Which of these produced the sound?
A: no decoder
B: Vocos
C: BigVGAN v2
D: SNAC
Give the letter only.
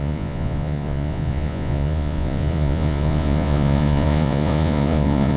B